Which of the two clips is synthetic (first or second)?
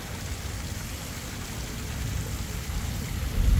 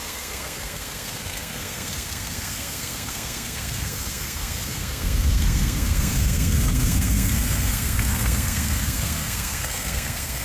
second